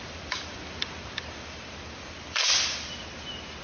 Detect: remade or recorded remade